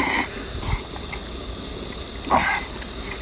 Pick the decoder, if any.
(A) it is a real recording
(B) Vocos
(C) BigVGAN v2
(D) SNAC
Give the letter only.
A